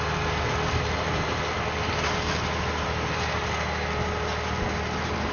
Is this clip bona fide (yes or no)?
yes